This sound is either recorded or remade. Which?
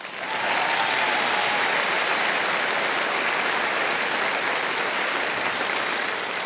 recorded